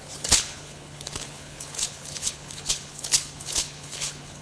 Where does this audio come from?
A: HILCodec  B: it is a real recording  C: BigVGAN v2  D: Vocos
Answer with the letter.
A